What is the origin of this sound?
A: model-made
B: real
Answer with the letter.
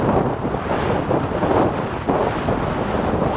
B